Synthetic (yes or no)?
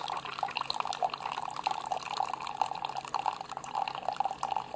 no